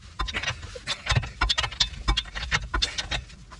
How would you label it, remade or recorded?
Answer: recorded